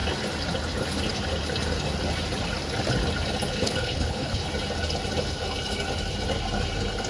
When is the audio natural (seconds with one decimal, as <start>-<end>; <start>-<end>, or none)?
0.0-3.5; 4.5-7.1